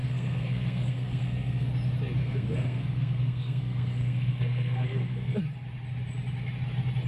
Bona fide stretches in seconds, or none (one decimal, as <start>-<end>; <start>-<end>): 1.7-2.2; 5.4-7.1